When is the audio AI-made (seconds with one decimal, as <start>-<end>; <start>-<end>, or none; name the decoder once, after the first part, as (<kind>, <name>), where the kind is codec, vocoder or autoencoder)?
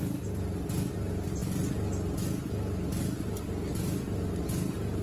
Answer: none